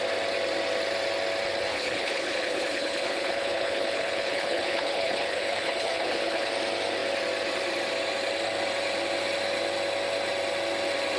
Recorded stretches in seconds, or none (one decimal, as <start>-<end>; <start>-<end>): 0.0-1.7; 6.5-11.2